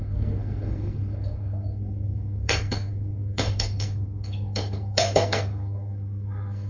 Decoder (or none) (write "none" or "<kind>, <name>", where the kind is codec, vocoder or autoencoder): codec, SNAC